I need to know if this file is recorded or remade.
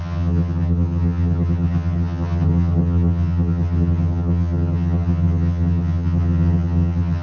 remade